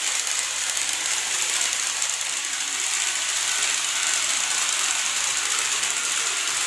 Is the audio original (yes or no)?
no